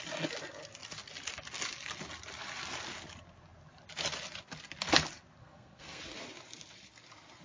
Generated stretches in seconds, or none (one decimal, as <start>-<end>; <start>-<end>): 5.4-6.0